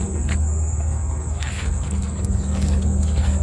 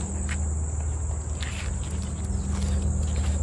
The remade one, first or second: first